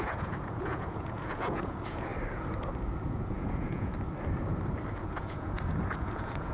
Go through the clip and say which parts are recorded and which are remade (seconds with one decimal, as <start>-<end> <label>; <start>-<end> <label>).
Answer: 0.0-2.1 remade; 2.1-3.1 recorded; 3.1-3.9 remade; 3.9-5.0 recorded; 5.0-6.5 remade